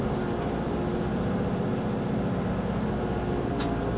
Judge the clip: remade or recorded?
recorded